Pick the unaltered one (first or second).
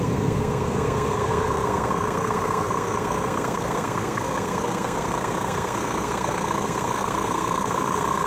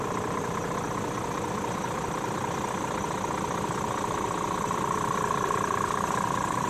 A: second